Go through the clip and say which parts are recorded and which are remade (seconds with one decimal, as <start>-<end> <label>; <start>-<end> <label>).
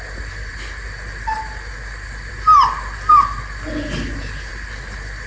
0.0-5.3 recorded